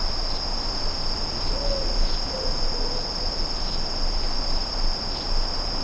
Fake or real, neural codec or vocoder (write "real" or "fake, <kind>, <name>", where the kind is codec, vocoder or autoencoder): real